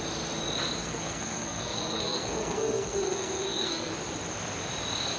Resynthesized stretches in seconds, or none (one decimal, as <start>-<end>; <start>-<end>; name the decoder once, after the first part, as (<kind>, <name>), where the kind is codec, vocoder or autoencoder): 0.8-3.9 (codec, SNAC)